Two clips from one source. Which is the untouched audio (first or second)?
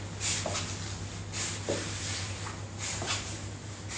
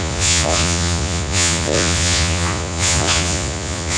first